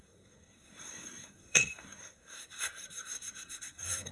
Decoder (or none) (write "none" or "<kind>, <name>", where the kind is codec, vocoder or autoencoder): codec, SNAC